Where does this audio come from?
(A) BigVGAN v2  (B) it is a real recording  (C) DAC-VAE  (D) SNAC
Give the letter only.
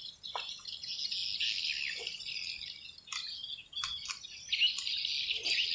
B